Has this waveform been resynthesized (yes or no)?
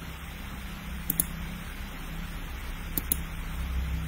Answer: no